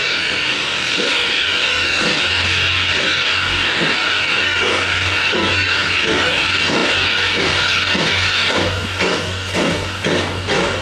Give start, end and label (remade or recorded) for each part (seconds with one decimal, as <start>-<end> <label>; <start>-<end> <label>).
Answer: 0.0-10.8 remade